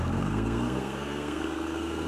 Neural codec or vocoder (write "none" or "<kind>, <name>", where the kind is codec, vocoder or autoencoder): codec, SNAC